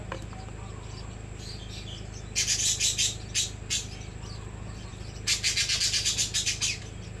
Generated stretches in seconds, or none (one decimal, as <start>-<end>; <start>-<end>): none